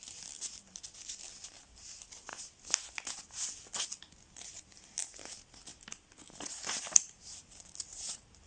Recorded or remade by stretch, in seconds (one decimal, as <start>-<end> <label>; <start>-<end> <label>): 0.0-8.5 recorded